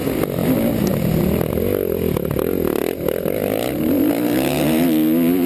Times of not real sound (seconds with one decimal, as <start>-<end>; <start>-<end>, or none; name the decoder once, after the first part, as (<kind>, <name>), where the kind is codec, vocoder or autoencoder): none